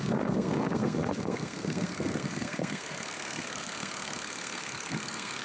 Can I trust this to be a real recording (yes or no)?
no